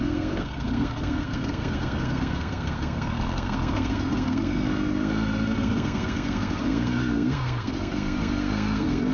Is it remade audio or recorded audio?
remade